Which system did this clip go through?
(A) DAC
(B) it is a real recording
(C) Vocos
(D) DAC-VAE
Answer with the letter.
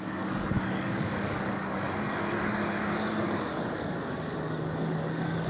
A